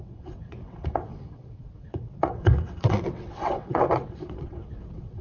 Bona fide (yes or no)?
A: no